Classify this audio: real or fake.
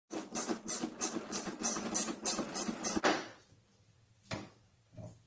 real